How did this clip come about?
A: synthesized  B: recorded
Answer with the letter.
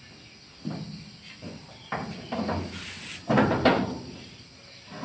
B